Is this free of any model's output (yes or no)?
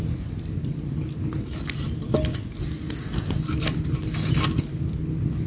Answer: yes